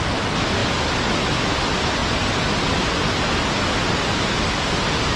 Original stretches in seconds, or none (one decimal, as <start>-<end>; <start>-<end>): 0.0-5.2